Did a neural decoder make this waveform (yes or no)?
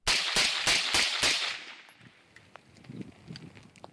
no